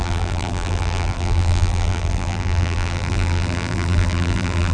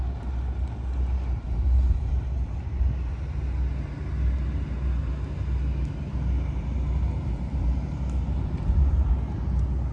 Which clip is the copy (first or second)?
first